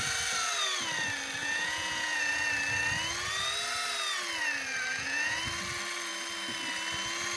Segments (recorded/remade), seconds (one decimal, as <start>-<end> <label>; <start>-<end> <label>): 0.0-1.4 recorded; 1.4-2.4 remade; 2.4-4.9 recorded; 4.9-5.4 remade; 5.4-7.4 recorded